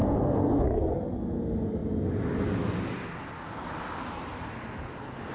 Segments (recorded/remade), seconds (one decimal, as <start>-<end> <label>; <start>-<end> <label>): 0.0-5.3 recorded